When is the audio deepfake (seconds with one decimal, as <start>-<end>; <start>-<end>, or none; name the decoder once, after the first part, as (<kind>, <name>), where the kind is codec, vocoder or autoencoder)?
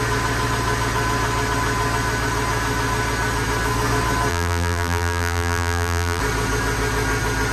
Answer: 4.3-6.2 (vocoder, BigVGAN v2)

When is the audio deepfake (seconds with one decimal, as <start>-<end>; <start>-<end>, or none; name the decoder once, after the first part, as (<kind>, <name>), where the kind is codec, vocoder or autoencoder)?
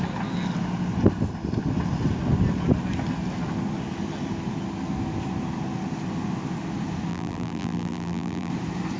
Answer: 7.1-8.5 (vocoder, BigVGAN v2)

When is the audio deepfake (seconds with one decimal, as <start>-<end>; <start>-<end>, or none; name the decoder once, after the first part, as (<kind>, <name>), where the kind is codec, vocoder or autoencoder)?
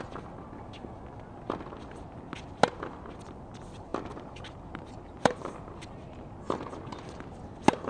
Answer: 3.9-6.4 (vocoder, BigVGAN v2)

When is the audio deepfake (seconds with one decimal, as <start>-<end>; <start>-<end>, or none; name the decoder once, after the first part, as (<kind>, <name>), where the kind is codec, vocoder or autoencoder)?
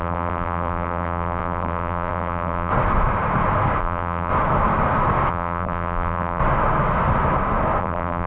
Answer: 0.0-2.7 (vocoder, BigVGAN v2); 3.8-4.3; 5.3-6.4; 7.8-8.3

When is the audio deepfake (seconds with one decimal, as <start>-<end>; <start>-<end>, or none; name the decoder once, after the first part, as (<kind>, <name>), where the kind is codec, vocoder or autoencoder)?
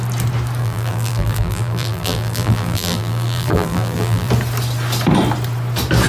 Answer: 0.6-4.3 (vocoder, BigVGAN v2)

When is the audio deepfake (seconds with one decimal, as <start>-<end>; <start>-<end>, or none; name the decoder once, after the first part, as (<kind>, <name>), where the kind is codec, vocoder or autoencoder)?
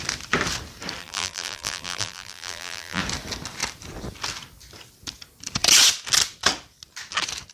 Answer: 1.0-3.0 (vocoder, BigVGAN v2)